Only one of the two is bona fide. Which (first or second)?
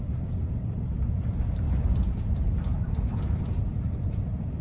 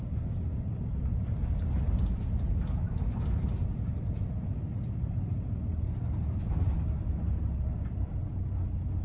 second